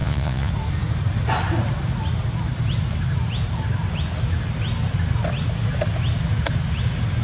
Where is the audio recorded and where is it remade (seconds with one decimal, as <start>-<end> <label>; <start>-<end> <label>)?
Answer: 0.0-0.5 remade; 0.5-7.2 recorded